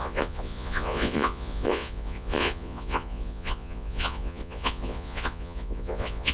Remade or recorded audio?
remade